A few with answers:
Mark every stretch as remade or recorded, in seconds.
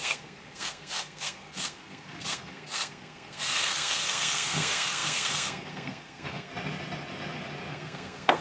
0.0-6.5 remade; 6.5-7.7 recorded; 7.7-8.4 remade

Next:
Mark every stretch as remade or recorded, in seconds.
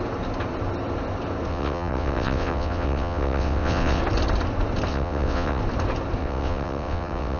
0.0-1.5 recorded; 1.5-4.0 remade; 4.0-4.9 recorded; 4.9-5.6 remade; 5.6-6.2 recorded; 6.2-7.4 remade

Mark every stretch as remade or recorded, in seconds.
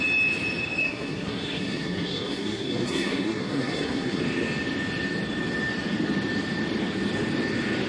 0.0-0.8 recorded; 0.8-4.2 remade; 4.2-7.9 recorded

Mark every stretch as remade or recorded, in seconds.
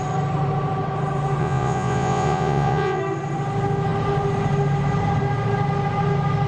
0.0-1.4 recorded; 1.4-3.0 remade; 3.0-6.5 recorded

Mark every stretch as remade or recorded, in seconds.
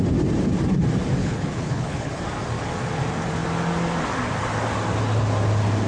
0.0-1.2 recorded; 1.2-2.2 remade; 2.2-5.9 recorded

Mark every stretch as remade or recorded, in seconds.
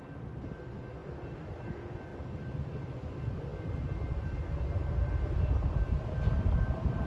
0.0-7.1 recorded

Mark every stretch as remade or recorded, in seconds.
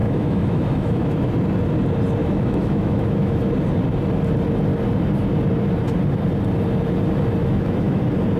0.0-1.3 remade; 1.3-2.2 recorded; 2.2-3.5 remade; 3.5-7.4 recorded; 7.4-8.0 remade; 8.0-8.4 recorded